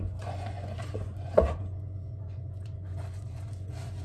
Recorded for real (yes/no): no